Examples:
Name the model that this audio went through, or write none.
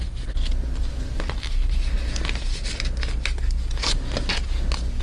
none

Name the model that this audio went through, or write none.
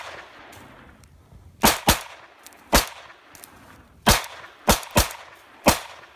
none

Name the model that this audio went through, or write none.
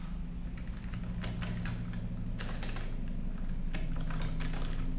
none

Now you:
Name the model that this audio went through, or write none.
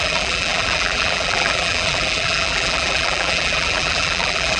vocoder, BigVGAN v2